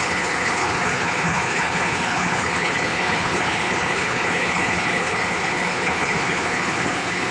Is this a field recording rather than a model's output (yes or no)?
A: no